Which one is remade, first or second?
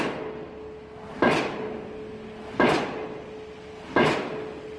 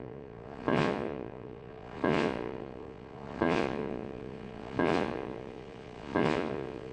second